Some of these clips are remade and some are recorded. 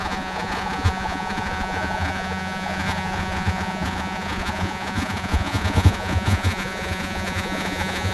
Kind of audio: remade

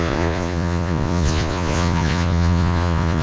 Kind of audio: remade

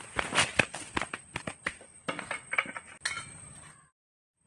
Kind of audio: recorded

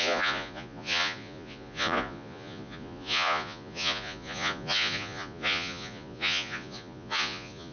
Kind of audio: remade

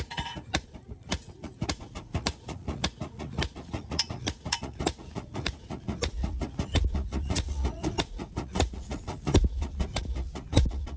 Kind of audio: remade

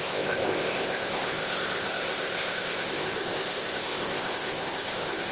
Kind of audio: remade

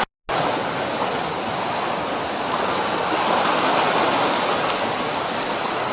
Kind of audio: recorded